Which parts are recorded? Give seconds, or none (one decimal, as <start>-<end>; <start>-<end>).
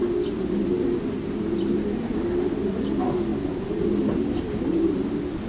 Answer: 0.0-5.5